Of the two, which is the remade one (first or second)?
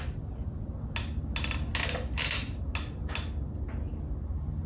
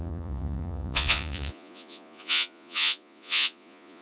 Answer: second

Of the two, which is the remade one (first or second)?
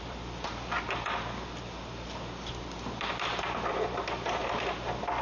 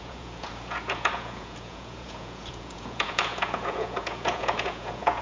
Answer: second